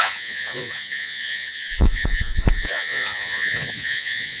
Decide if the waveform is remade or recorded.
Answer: remade